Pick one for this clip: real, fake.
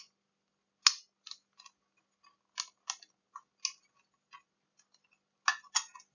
real